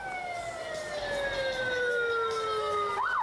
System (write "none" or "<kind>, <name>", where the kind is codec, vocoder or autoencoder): none